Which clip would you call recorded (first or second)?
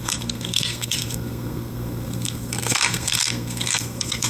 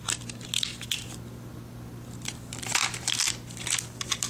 second